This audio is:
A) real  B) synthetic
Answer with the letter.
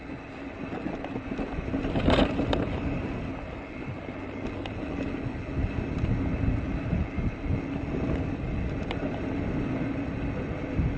A